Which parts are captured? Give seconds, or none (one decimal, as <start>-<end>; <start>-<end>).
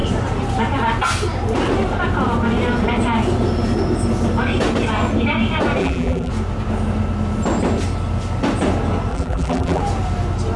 0.0-5.8; 6.3-9.1; 9.8-10.6